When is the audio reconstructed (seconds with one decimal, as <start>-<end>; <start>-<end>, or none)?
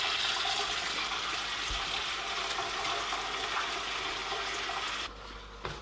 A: 2.0-3.2; 4.2-5.8